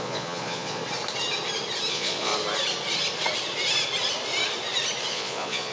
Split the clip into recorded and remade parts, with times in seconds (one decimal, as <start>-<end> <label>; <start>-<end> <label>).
0.0-0.8 remade; 0.8-1.9 recorded; 1.9-2.3 remade; 2.3-5.1 recorded; 5.1-5.7 remade